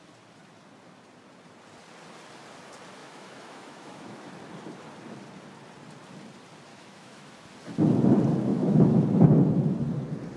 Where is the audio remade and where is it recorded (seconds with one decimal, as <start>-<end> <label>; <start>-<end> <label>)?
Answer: 0.0-3.0 recorded; 3.0-4.3 remade; 4.3-6.7 recorded; 6.7-7.3 remade; 7.3-8.5 recorded; 8.5-9.0 remade; 9.0-10.4 recorded